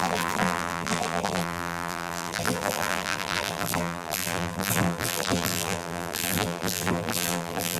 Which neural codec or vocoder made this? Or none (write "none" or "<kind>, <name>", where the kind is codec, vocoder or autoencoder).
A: vocoder, BigVGAN v2